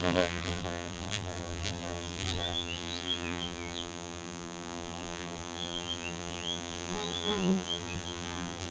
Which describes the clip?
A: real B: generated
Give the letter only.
B